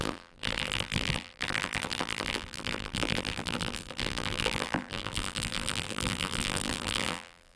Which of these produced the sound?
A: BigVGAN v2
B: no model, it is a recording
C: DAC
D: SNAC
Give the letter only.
A